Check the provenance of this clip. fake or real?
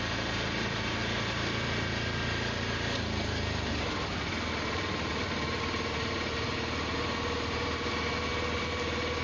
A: real